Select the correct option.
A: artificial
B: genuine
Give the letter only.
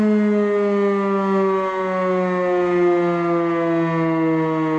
B